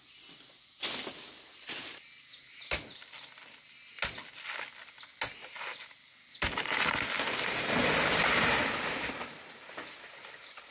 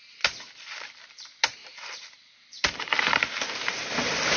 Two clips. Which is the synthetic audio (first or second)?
second